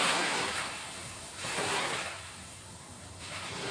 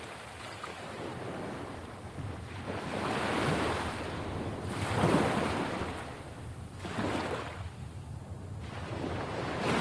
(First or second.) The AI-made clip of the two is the first